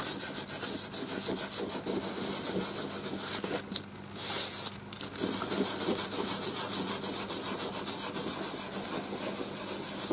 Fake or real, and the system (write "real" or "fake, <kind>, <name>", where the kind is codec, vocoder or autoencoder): real